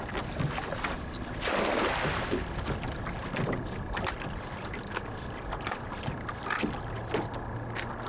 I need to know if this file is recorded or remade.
recorded